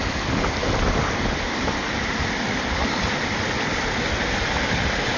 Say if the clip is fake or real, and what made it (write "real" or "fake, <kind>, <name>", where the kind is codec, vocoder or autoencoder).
real